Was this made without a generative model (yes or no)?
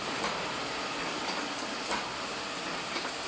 yes